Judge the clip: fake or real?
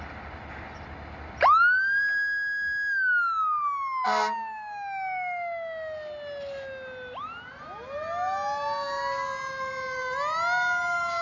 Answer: real